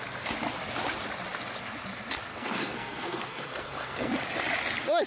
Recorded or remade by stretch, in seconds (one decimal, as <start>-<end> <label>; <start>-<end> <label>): 0.0-2.3 recorded; 2.3-4.1 remade; 4.1-5.1 recorded